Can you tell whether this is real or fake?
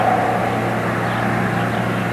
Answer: real